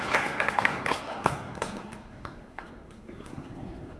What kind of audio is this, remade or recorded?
remade